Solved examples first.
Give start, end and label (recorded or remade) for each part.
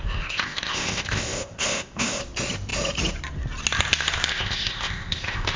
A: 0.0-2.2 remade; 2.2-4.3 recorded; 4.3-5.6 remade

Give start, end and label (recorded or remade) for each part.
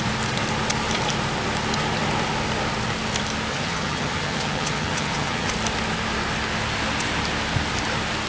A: 0.0-3.5 recorded; 3.5-5.5 remade; 5.5-8.3 recorded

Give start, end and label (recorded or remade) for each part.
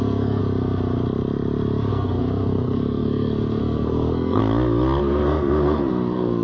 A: 0.0-0.4 remade; 0.4-1.9 recorded; 1.9-4.4 remade; 4.4-5.0 recorded; 5.0-6.4 remade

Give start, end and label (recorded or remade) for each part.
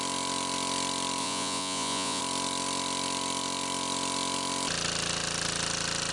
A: 0.0-1.2 recorded; 1.2-2.2 remade; 2.2-6.1 recorded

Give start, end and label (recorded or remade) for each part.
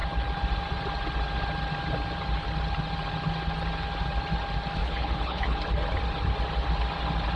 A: 0.0-4.8 recorded; 4.8-5.6 remade; 5.6-7.4 recorded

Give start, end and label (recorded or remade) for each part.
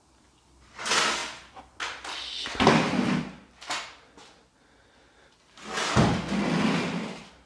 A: 0.0-7.5 recorded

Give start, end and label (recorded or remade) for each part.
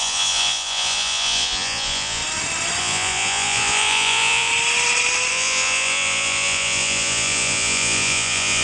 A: 0.0-2.2 remade; 2.2-2.8 recorded; 2.8-4.5 remade; 4.5-5.3 recorded; 5.3-8.6 remade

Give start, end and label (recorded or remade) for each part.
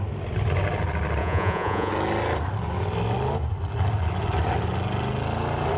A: 0.0-1.2 recorded; 1.2-1.9 remade; 1.9-5.8 recorded